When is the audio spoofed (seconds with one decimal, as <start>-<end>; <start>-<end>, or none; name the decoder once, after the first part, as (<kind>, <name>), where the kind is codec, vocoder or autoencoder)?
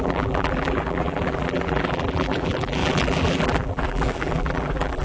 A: 0.0-5.0 (vocoder, BigVGAN v2)